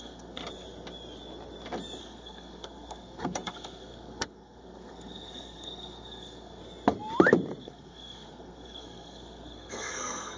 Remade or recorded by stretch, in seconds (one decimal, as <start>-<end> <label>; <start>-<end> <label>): 0.0-0.4 remade; 0.4-2.0 recorded; 2.0-6.6 remade; 6.6-7.6 recorded; 7.6-10.4 remade